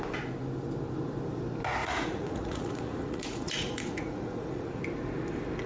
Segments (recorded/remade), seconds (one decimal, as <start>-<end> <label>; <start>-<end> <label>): 0.0-1.8 recorded; 1.8-4.8 remade; 4.8-5.7 recorded